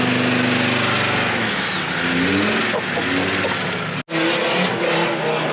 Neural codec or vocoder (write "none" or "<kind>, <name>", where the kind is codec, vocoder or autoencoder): none